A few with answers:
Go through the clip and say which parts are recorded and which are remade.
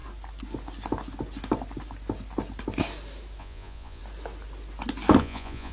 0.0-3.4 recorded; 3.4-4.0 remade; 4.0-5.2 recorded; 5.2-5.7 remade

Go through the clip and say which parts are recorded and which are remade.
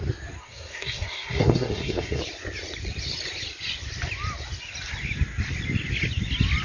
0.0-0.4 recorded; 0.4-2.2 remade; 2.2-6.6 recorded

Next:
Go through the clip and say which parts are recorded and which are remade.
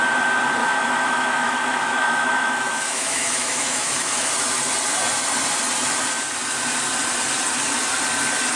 0.0-0.6 recorded; 0.6-4.3 remade; 4.3-8.6 recorded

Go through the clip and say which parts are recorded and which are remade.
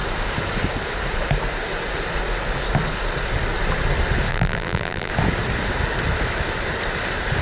0.0-4.3 recorded; 4.3-5.1 remade; 5.1-7.4 recorded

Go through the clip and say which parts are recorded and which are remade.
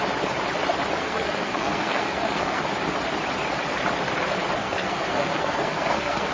0.0-1.0 recorded; 1.0-2.6 remade; 2.6-4.6 recorded; 4.6-6.3 remade